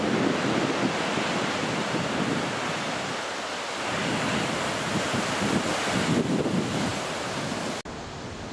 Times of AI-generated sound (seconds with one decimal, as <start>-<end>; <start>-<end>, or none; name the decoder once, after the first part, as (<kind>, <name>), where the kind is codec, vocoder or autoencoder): 6.9-7.7 (vocoder, BigVGAN v2)